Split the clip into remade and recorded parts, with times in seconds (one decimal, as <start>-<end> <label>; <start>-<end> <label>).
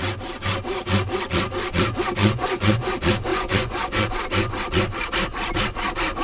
0.0-2.2 recorded; 2.2-2.9 remade; 2.9-3.3 recorded; 3.3-4.1 remade; 4.1-6.2 recorded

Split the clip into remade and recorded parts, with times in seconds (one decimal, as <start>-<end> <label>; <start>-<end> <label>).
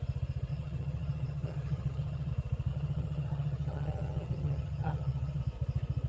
0.0-0.5 recorded; 0.5-2.3 remade; 2.3-2.7 recorded; 2.7-5.4 remade; 5.4-6.1 recorded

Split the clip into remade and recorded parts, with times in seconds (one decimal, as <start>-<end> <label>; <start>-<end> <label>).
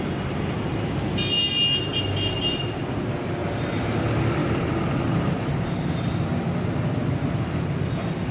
0.0-3.4 recorded; 3.4-4.0 remade; 4.0-8.3 recorded